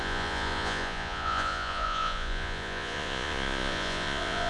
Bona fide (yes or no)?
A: no